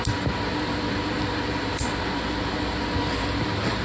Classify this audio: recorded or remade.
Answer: recorded